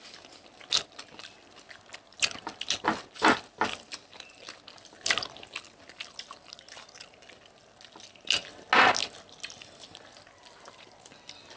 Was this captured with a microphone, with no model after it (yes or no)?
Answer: yes